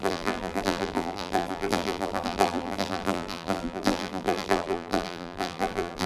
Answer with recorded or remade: remade